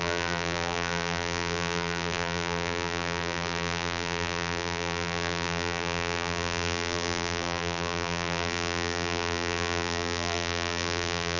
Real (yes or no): no